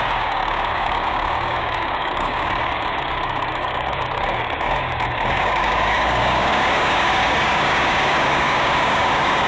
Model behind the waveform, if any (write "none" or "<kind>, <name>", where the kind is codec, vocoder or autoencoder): codec, DAC